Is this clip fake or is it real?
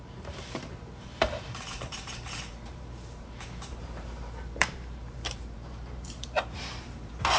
fake